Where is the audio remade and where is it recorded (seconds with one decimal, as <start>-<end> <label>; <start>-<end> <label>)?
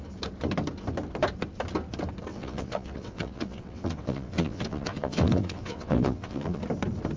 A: 0.0-2.3 recorded; 2.3-6.6 remade; 6.6-7.2 recorded